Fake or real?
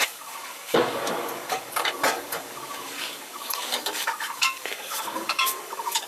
fake